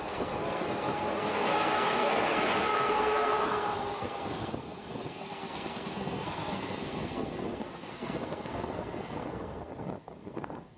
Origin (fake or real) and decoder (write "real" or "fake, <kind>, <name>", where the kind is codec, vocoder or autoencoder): fake, codec, SNAC